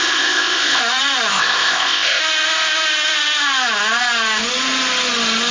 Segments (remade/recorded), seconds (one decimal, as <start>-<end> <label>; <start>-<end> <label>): 0.0-0.8 remade; 0.8-1.3 recorded; 1.3-2.2 remade; 2.2-5.5 recorded